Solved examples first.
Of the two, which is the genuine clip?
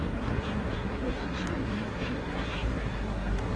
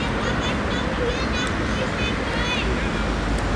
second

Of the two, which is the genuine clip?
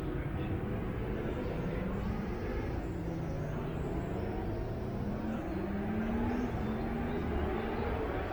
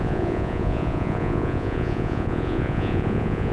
first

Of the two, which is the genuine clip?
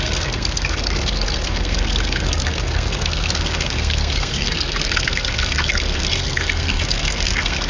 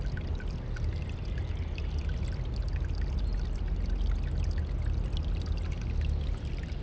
second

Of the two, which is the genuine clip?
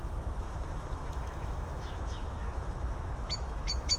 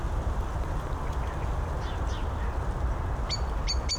second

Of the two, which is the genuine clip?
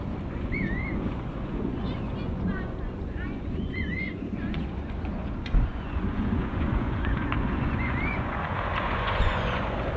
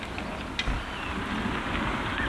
second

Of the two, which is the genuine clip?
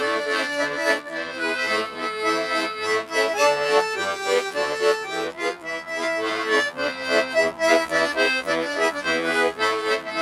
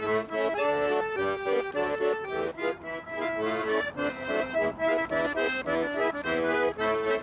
second